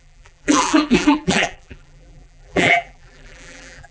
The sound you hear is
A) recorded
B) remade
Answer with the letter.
B